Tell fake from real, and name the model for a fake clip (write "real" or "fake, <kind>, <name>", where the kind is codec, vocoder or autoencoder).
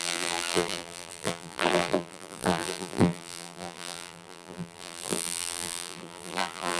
fake, vocoder, BigVGAN v2